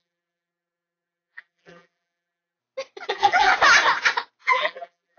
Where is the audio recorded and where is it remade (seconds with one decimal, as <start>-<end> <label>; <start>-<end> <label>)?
0.0-2.6 remade; 2.6-3.1 recorded; 3.1-3.5 remade; 3.5-4.4 recorded; 4.4-5.2 remade